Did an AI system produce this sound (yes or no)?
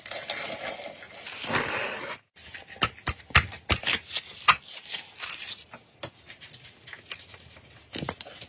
no